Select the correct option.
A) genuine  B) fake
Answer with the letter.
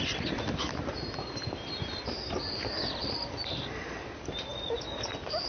A